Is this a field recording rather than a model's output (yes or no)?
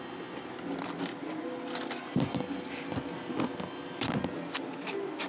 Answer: yes